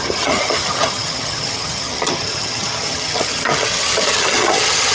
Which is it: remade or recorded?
remade